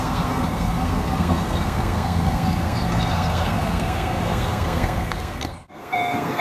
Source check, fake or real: fake